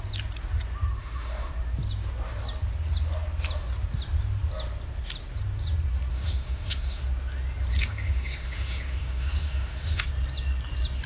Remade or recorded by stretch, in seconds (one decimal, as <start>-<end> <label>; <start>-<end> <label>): 0.0-1.0 recorded; 1.0-1.5 remade; 1.5-6.1 recorded; 6.1-7.0 remade; 7.0-7.7 recorded; 7.7-10.1 remade; 10.1-11.1 recorded